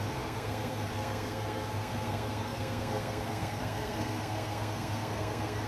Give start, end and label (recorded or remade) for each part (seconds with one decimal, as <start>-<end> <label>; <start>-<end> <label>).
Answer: 0.0-5.7 remade